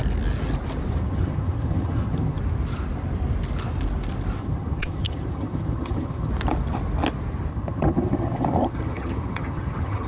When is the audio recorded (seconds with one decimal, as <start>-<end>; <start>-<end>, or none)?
0.0-1.0; 2.4-4.4; 6.3-7.5